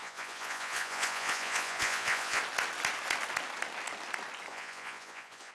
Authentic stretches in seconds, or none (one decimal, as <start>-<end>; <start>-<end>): 2.4-4.5